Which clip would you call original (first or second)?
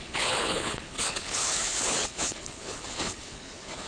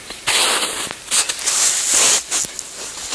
second